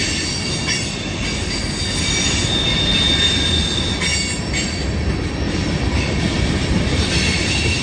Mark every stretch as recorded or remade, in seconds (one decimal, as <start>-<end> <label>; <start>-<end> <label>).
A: 0.0-7.8 recorded